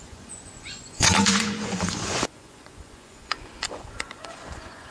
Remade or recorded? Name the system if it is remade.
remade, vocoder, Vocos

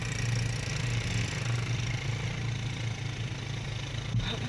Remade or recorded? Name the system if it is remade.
recorded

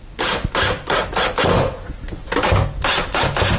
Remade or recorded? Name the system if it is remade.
recorded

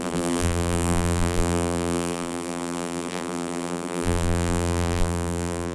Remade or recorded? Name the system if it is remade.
remade, vocoder, BigVGAN v2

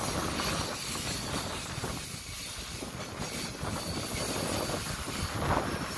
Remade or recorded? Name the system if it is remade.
recorded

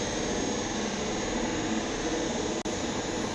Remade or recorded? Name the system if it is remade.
recorded